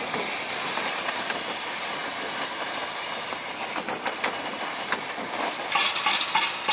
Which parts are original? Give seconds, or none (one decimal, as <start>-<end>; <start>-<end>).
none